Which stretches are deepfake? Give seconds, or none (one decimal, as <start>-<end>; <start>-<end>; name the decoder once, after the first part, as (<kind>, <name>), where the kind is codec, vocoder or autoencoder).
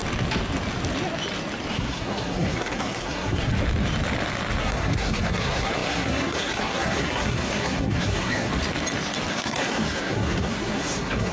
1.7-3.5 (codec, SNAC); 4.6-8.5; 9.3-11.3